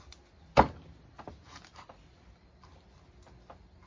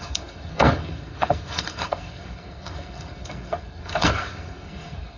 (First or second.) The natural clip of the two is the first